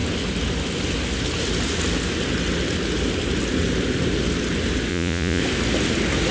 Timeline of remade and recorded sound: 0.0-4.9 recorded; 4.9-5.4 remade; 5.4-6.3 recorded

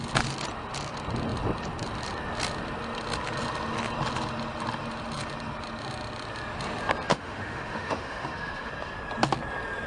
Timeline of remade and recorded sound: 0.0-7.1 recorded; 7.1-8.7 remade; 8.7-9.9 recorded

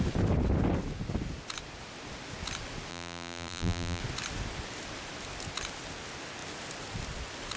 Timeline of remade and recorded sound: 0.0-2.9 recorded; 2.9-4.0 remade; 4.0-7.6 recorded

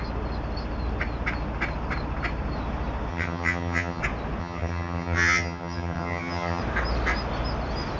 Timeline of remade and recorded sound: 0.0-3.1 recorded; 3.1-4.0 remade; 4.0-4.4 recorded; 4.4-6.6 remade; 6.6-8.0 recorded

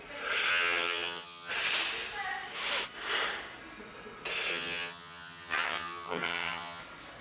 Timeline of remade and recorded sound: 0.0-0.5 recorded; 0.5-1.5 remade; 1.5-4.5 recorded; 4.5-6.8 remade; 6.8-7.2 recorded

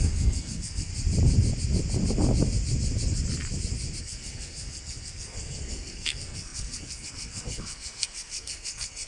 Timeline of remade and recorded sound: 0.0-0.9 remade; 0.9-4.0 recorded; 4.0-9.1 remade

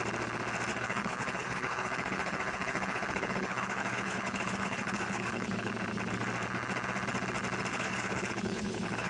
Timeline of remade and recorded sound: 0.0-0.7 recorded; 0.7-5.7 remade; 5.7-7.7 recorded; 7.7-9.1 remade